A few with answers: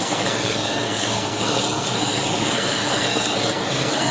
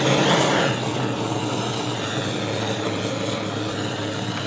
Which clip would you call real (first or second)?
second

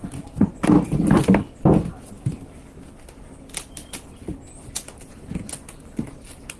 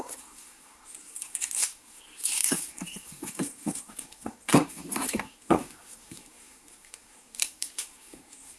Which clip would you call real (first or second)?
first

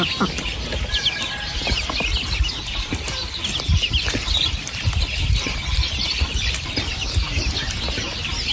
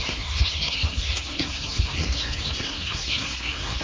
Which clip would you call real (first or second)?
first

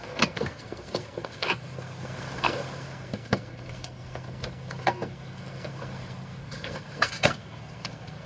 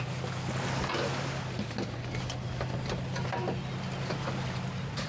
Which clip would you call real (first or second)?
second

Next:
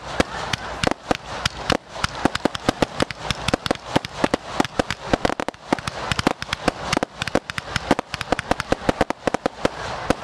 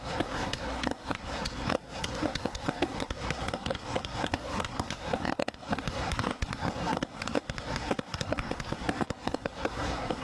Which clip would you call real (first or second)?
first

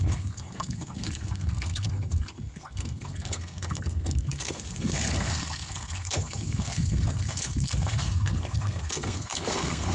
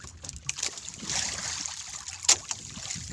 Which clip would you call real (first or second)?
second